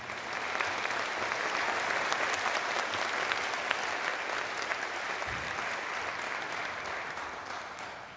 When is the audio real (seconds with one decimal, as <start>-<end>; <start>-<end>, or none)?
0.0-4.7; 5.3-8.2

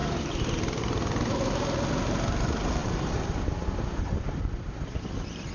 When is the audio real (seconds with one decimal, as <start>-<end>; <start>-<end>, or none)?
0.0-2.8; 4.4-5.5

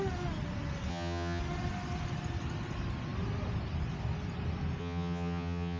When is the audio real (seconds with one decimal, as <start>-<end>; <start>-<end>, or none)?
0.0-0.9; 1.4-4.8

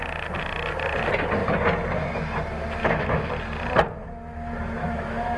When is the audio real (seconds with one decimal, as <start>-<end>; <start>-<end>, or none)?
0.0-2.8; 3.3-4.8